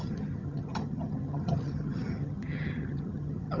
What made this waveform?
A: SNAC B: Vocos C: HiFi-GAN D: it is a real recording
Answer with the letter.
C